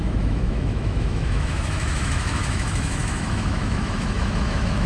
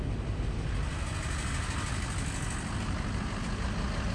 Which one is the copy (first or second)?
first